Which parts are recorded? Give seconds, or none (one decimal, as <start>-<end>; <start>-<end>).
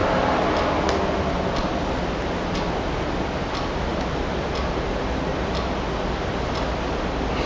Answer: 0.0-7.5